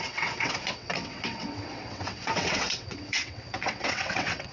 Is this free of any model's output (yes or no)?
no